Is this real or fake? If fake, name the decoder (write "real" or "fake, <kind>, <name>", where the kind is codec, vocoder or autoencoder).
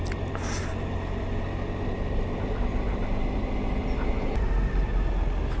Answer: real